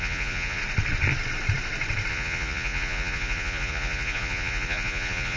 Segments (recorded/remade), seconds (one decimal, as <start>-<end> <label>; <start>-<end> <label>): 0.0-0.6 remade; 0.6-2.1 recorded; 2.1-5.4 remade